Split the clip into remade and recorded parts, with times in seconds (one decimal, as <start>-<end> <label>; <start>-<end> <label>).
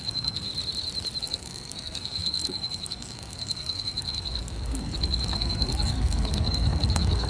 0.0-0.5 remade; 0.5-1.2 recorded; 1.2-7.3 remade